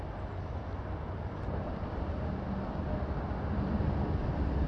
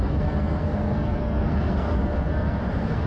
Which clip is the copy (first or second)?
second